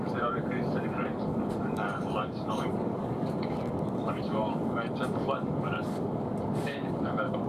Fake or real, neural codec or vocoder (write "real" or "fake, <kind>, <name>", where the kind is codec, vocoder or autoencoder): fake, codec, DAC